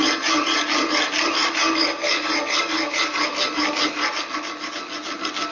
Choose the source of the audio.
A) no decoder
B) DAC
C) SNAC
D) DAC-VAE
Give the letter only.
A